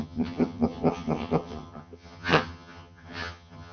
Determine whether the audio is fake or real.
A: fake